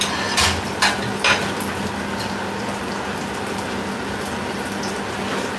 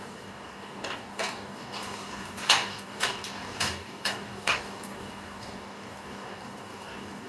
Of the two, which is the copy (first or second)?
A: second